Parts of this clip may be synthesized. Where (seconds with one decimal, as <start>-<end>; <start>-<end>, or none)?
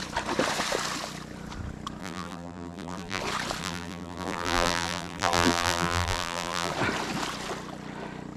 2.0-3.2; 3.6-6.7